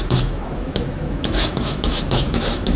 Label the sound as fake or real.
fake